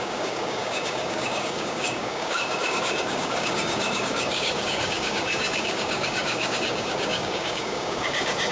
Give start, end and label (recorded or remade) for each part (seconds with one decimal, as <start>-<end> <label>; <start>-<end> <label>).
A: 0.0-8.5 remade